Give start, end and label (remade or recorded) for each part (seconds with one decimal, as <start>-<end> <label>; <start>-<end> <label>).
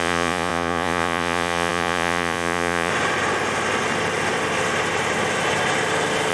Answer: 0.0-2.9 remade; 2.9-6.3 recorded